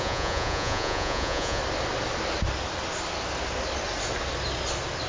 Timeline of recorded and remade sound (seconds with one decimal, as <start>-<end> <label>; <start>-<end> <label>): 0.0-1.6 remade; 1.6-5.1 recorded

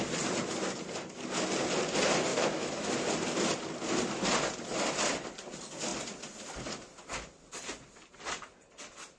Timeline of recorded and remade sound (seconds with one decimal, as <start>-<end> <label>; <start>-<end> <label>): 0.0-2.3 recorded; 2.3-2.9 remade; 2.9-9.2 recorded

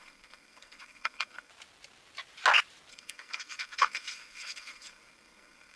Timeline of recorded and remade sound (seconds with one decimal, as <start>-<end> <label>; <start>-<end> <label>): 0.0-1.5 remade; 1.5-2.9 recorded; 2.9-5.8 remade

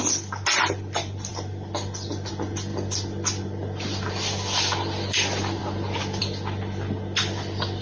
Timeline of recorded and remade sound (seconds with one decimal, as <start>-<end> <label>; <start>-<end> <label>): 0.0-2.7 recorded; 2.7-4.1 remade; 4.1-7.8 recorded